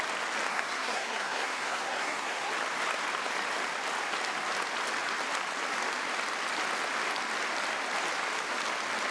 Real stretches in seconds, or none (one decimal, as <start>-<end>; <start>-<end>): 0.0-0.5; 2.5-9.1